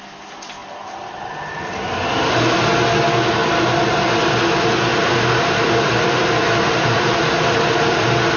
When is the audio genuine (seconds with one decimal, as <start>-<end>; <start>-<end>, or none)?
0.0-0.6; 1.2-4.9